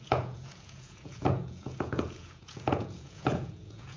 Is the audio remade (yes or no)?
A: yes